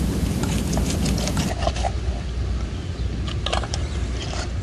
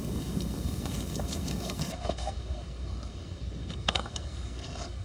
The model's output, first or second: second